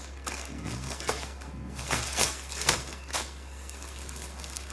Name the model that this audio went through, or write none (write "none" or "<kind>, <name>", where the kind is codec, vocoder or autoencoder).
codec, SNAC